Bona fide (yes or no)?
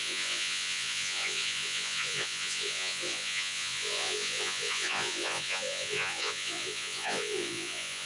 no